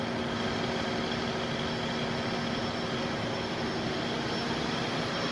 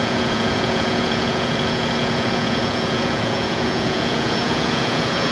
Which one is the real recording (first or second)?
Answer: first